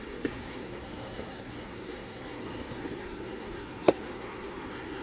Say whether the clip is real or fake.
fake